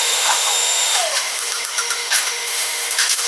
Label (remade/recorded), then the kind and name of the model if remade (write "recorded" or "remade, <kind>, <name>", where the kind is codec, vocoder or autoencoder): remade, autoencoder, DAC-VAE